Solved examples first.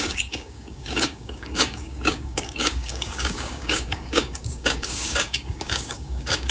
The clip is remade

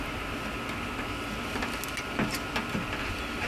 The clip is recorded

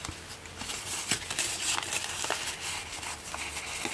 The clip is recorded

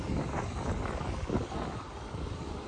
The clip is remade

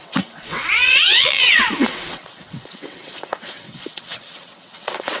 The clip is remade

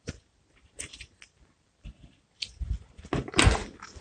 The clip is recorded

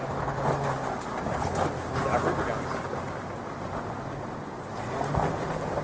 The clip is recorded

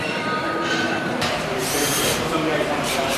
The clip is remade